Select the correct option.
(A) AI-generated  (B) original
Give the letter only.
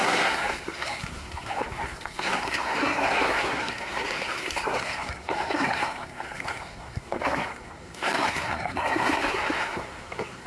A